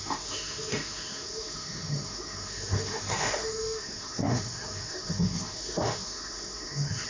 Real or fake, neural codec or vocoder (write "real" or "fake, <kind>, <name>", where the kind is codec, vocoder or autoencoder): fake, autoencoder, DAC-VAE